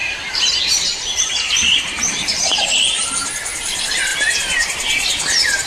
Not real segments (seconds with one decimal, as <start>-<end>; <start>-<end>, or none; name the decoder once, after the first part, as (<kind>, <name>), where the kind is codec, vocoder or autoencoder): 0.0-0.5 (vocoder, BigVGAN v2); 2.1-3.1